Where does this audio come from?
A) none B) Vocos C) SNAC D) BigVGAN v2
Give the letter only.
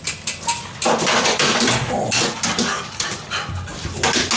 A